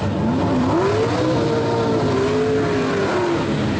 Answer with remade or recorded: recorded